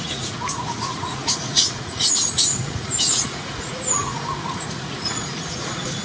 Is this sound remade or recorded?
remade